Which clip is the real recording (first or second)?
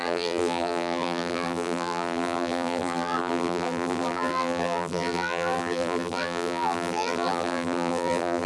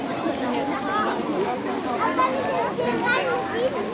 second